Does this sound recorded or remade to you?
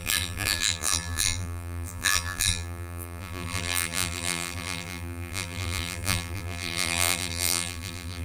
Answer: remade